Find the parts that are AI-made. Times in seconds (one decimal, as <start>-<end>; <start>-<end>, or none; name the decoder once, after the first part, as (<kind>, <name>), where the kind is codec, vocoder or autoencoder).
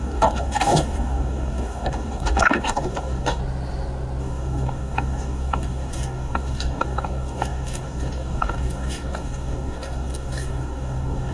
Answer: 0.0-3.4 (codec, DAC); 4.2-11.3